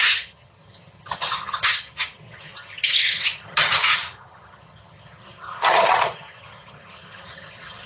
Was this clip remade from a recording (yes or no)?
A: yes